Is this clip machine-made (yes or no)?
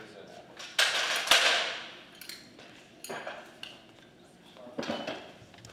no